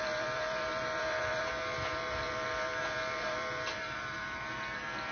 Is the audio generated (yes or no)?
yes